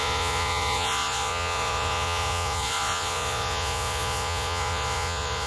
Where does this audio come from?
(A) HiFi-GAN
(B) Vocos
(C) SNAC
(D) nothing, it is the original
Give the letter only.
B